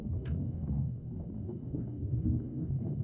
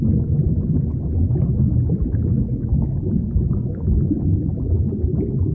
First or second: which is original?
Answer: second